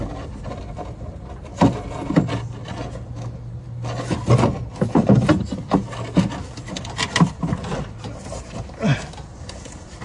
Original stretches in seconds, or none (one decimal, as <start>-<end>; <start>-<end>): 0.0-10.0